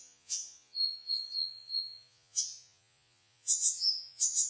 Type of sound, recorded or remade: remade